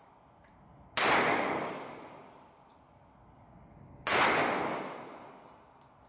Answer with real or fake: real